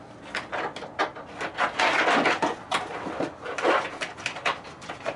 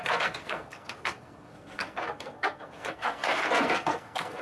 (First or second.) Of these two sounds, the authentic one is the first